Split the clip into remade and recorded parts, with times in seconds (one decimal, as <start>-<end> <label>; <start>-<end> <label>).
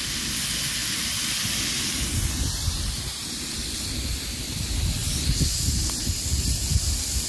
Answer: 0.0-7.3 recorded